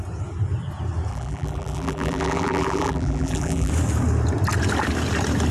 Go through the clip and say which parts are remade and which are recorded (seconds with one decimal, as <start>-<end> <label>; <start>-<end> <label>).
0.0-1.1 recorded; 1.1-3.7 remade; 3.7-5.5 recorded